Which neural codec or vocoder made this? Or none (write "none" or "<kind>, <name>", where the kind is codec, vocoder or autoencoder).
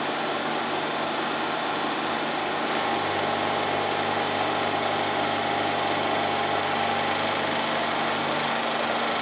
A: none